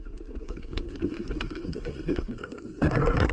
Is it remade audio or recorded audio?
remade